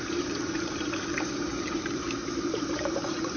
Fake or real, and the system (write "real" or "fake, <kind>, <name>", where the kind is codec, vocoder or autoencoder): fake, vocoder, BigVGAN v2